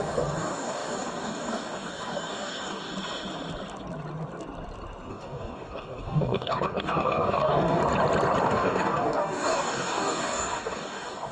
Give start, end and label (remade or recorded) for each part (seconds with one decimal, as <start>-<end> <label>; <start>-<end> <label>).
0.0-2.9 remade; 2.9-5.1 recorded; 5.1-7.8 remade; 7.8-8.4 recorded; 8.4-11.3 remade